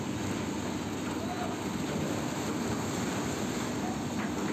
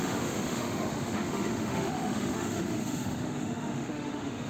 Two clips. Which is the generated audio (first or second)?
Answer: second